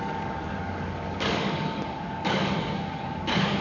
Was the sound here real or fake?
fake